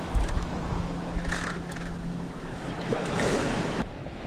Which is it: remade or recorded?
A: remade